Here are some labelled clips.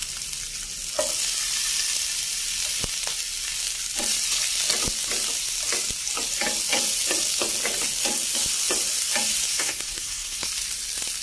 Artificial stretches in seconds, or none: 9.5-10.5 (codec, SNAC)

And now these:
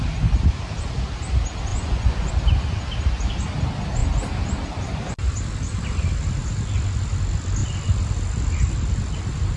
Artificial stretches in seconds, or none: 1.7-2.3 (vocoder, Vocos)

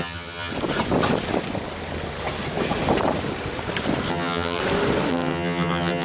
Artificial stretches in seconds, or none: 0.0-0.5 (vocoder, HiFi-GAN); 4.1-4.6; 5.1-6.0

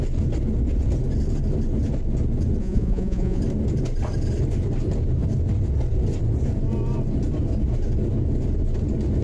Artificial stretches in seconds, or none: 2.6-3.4 (vocoder, Vocos)

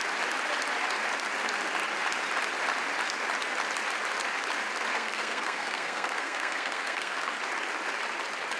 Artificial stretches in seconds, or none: 4.9-7.3 (codec, SNAC)

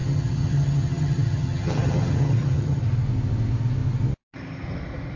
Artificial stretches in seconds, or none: 0.0-2.8 (vocoder, HiFi-GAN)

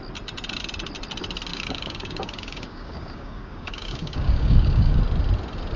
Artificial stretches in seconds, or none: 1.5-5.0 (codec, DAC)

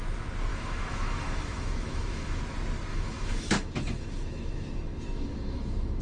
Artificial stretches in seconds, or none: 0.5-2.4 (autoencoder, DAC-VAE); 2.9-6.0